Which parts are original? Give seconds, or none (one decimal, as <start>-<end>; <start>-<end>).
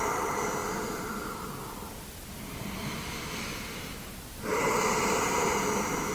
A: 0.0-6.1